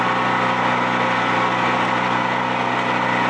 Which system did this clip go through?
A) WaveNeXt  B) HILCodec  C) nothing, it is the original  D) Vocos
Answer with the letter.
C